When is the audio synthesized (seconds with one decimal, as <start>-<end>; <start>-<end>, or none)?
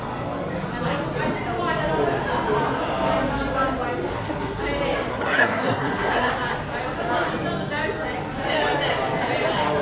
4.1-4.6; 5.1-6.3